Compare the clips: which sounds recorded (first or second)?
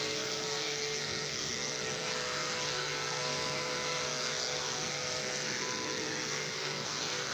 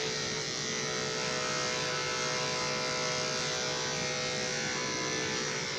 second